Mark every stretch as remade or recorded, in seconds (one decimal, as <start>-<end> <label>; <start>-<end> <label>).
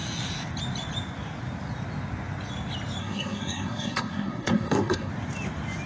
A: 0.0-3.0 recorded; 3.0-5.1 remade; 5.1-5.9 recorded